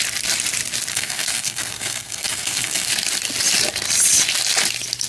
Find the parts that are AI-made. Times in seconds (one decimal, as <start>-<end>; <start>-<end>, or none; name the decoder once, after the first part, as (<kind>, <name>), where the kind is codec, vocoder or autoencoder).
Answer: 0.9-2.9 (codec, SNAC)